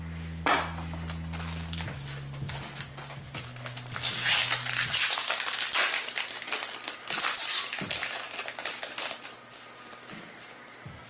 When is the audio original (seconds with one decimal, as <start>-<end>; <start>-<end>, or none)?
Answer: 0.0-5.8; 7.1-11.1